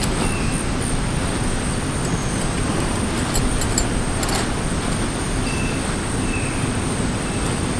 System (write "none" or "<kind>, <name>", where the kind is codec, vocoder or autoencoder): none